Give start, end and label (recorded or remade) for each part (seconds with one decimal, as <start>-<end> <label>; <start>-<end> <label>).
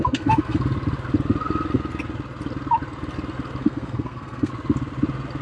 0.0-0.6 remade; 0.6-3.6 recorded; 3.6-4.5 remade; 4.5-5.4 recorded